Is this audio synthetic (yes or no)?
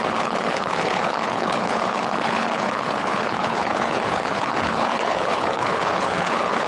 yes